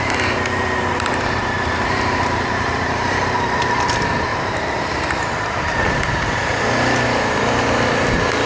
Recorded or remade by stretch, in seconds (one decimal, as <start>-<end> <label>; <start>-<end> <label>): 0.0-1.4 recorded; 1.4-3.2 remade; 3.2-4.3 recorded; 4.3-6.6 remade; 6.6-8.5 recorded